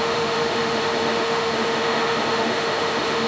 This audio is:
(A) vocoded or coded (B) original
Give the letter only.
A